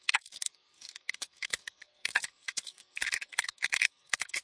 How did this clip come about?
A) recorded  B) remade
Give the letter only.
B